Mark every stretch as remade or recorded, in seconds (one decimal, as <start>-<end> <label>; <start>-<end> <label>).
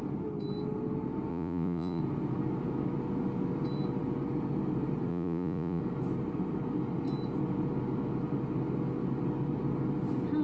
0.0-1.3 recorded; 1.3-2.0 remade; 2.0-5.1 recorded; 5.1-5.8 remade; 5.8-10.4 recorded